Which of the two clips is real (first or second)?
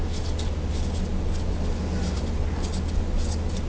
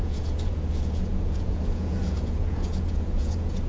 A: first